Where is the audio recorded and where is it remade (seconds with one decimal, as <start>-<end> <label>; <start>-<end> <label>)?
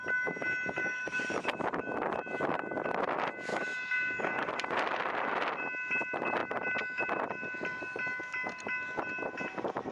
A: 0.0-0.8 recorded; 0.8-1.4 remade; 1.4-3.5 recorded; 3.5-4.5 remade; 4.5-9.9 recorded